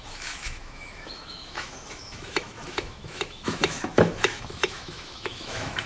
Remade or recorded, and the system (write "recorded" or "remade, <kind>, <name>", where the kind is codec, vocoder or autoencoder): remade, autoencoder, DAC-VAE